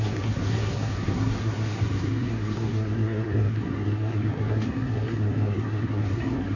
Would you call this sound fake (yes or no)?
yes